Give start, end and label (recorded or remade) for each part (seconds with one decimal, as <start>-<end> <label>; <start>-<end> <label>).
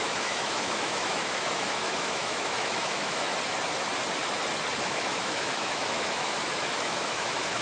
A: 0.0-3.3 remade; 3.3-4.8 recorded; 4.8-7.6 remade